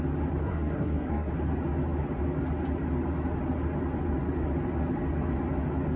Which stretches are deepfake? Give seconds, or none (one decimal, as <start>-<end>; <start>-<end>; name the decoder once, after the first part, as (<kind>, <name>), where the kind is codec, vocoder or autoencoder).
0.4-1.3 (codec, SNAC)